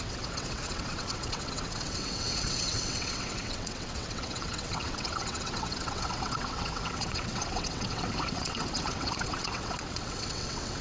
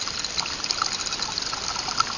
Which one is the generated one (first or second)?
first